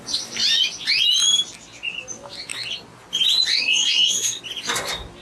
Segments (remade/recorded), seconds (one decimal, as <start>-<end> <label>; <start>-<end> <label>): 0.0-3.5 recorded; 3.5-4.4 remade; 4.4-5.2 recorded